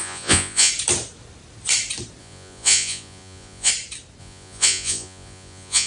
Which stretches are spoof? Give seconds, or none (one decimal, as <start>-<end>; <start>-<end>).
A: 0.0-0.7; 2.2-3.7; 4.2-5.9